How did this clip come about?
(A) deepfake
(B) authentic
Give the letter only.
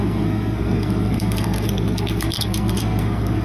A